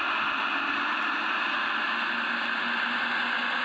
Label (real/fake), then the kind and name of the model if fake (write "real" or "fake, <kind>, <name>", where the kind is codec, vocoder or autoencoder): real